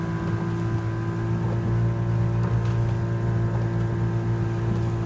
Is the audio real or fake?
real